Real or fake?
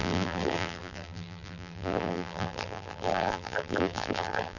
fake